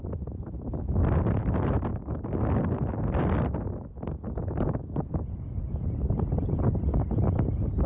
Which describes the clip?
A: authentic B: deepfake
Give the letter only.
A